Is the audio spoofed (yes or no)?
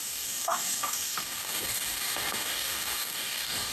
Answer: yes